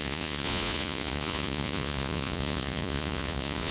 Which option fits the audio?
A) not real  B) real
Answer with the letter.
A